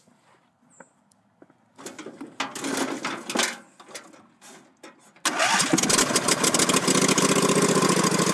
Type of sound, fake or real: real